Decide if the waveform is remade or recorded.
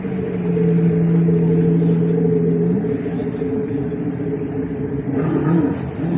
recorded